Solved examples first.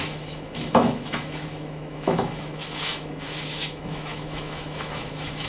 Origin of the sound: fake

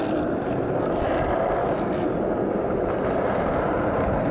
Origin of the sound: real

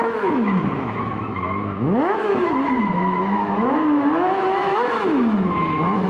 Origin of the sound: fake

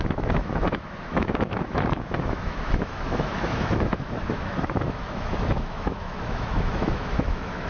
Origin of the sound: fake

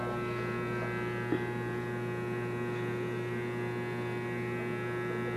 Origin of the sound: real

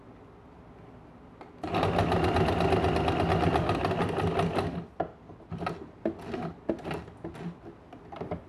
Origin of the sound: real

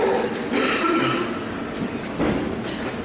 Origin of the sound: real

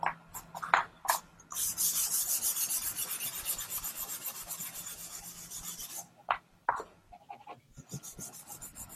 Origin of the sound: real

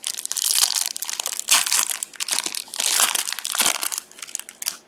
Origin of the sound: real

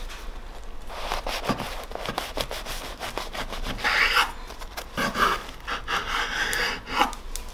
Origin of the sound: real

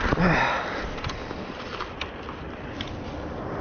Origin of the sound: real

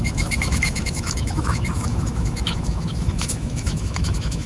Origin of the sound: fake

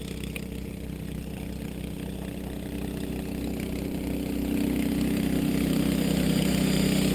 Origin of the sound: real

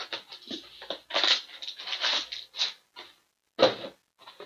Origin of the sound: real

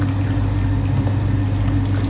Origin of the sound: real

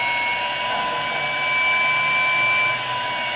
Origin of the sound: real